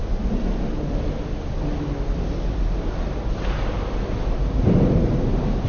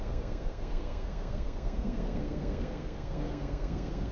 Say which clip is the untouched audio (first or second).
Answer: first